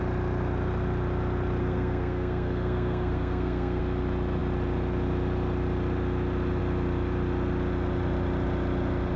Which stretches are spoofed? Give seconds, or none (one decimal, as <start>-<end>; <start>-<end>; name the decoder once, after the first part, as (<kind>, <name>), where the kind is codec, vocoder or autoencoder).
1.6-3.8 (codec, SNAC)